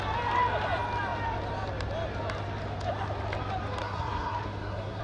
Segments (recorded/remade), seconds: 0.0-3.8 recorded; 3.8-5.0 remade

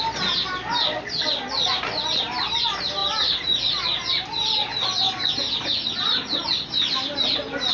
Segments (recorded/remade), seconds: 0.0-7.7 recorded

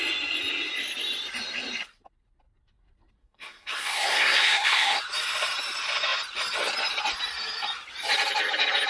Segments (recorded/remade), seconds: 0.0-3.2 recorded; 3.2-5.0 remade; 5.0-8.9 recorded

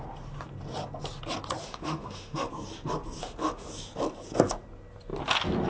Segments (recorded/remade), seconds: 0.0-1.6 recorded; 1.6-2.5 remade; 2.5-3.2 recorded; 3.2-3.7 remade; 3.7-5.7 recorded